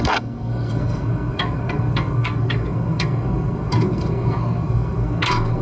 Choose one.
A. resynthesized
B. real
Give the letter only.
A